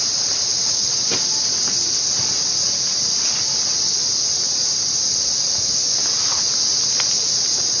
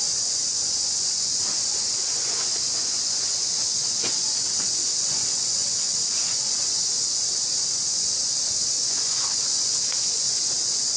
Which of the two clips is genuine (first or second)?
first